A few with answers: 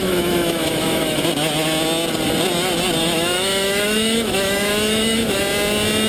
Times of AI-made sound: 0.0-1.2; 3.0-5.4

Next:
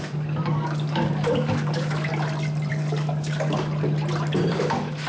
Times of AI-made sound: 0.0-2.1; 2.7-3.7; 4.5-5.1

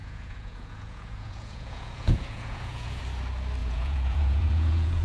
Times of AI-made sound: 0.0-3.0; 3.6-5.0